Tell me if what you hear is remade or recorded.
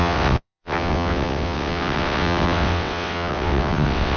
remade